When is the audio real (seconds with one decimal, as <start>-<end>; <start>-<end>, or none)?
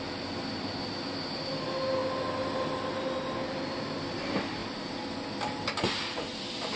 0.0-6.8